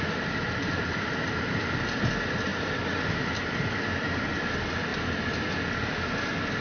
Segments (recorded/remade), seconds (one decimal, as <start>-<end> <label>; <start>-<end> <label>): 0.0-2.5 recorded; 2.5-3.8 remade; 3.8-6.6 recorded